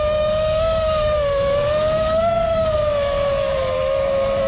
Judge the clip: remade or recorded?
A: remade